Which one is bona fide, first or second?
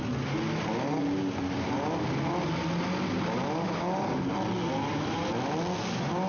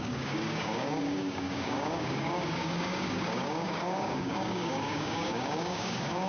first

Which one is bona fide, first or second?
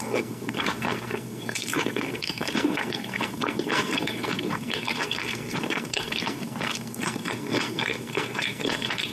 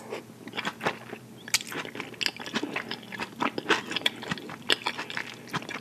second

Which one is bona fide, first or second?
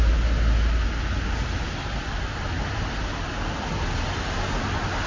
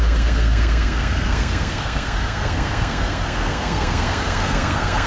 first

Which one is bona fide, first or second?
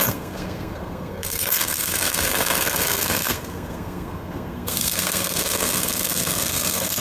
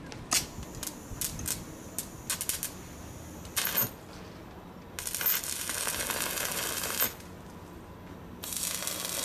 second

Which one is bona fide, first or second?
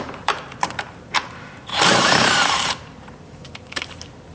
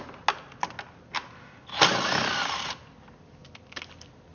second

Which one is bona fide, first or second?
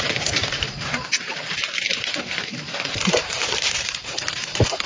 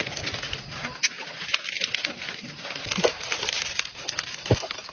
second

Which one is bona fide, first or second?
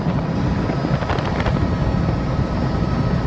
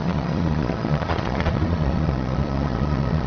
first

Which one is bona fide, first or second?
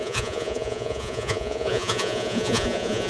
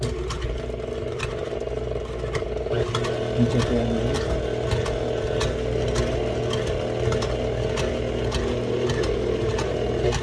second